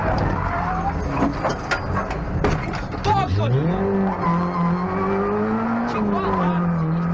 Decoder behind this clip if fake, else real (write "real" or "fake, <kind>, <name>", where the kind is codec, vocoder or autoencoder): real